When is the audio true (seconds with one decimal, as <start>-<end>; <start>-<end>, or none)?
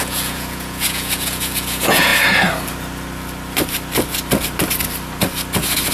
2.1-5.9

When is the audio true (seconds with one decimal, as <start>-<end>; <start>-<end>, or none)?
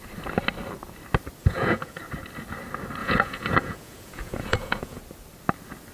0.0-1.4; 2.0-3.0; 5.0-5.9